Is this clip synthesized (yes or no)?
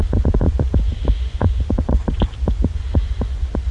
yes